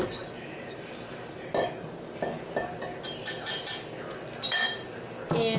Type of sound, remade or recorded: recorded